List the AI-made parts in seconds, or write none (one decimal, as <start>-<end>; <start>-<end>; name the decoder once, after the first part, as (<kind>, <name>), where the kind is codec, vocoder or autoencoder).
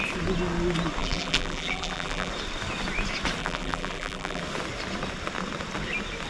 1.0-2.3 (vocoder, BigVGAN v2); 3.4-4.4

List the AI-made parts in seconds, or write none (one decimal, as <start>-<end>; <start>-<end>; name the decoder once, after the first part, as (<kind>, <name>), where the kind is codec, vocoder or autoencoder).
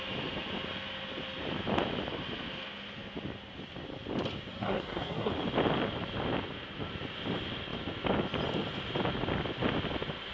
4.5-5.3 (codec, SNAC)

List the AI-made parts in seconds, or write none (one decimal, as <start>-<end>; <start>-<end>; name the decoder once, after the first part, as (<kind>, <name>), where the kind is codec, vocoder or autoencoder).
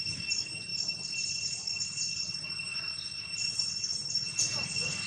0.7-2.8 (vocoder, BigVGAN v2)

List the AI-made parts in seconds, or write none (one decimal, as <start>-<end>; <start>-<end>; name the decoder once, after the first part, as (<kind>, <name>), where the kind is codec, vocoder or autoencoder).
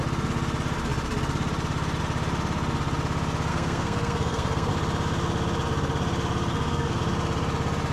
3.5-4.7 (codec, SNAC); 6.5-7.0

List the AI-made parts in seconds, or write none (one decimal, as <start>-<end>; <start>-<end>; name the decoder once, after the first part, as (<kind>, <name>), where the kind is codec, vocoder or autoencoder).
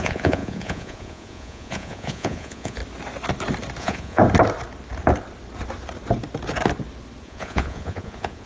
0.0-2.8 (vocoder, Vocos); 3.8-4.2; 7.2-8.5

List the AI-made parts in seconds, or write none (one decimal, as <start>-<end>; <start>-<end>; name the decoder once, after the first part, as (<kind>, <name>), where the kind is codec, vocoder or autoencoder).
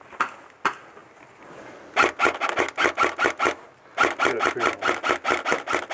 none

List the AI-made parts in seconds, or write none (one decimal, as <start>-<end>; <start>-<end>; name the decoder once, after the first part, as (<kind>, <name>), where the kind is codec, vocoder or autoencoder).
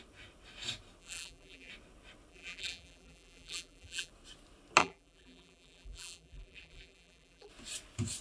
1.0-1.7 (vocoder, BigVGAN v2); 2.3-4.1; 4.8-7.5